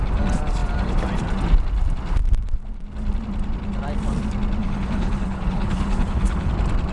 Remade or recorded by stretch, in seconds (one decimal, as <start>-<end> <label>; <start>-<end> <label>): 0.0-4.6 recorded; 4.6-6.5 remade; 6.5-6.9 recorded